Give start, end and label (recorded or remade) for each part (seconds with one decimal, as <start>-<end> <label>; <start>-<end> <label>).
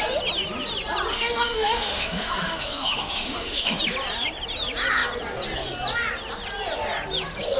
0.0-1.1 recorded; 1.1-3.8 remade; 3.8-7.6 recorded